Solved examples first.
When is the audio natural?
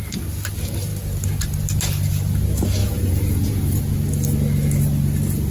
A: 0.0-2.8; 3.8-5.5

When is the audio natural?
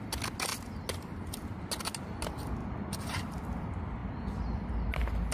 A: 0.0-2.6; 3.4-5.3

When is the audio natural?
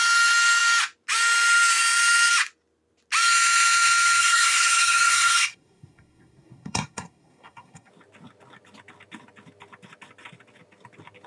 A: 0.0-4.2; 7.9-11.3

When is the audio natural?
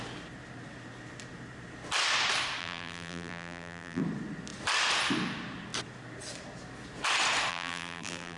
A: 0.0-2.6; 4.0-7.5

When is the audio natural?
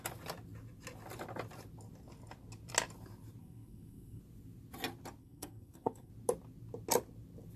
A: 0.0-3.4; 4.2-5.2; 6.1-7.6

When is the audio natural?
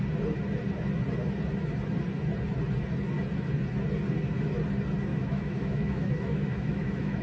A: 0.0-5.1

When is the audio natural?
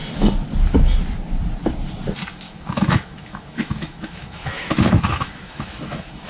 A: 0.0-2.3